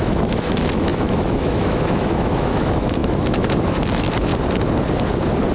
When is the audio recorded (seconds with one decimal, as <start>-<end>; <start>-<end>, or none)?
4.3-5.5